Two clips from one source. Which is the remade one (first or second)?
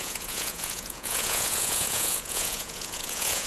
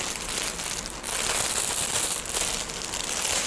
first